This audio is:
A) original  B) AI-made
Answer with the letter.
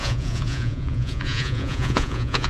B